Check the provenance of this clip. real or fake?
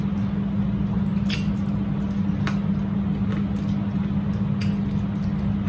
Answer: real